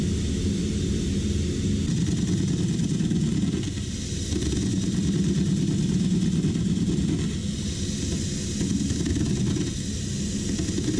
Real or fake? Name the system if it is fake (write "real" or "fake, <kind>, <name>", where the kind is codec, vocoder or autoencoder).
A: real